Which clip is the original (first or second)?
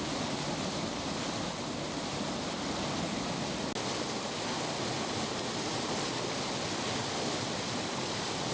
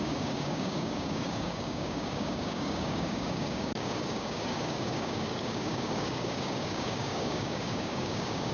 first